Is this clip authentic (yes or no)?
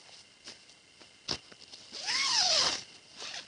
yes